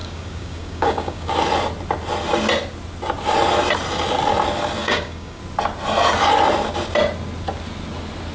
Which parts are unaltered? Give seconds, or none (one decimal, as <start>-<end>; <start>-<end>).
1.3-4.8; 5.4-8.3